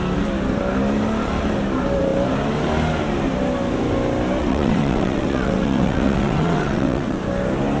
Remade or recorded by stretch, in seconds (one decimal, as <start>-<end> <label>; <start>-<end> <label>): 0.0-4.4 recorded; 4.4-7.2 remade; 7.2-7.8 recorded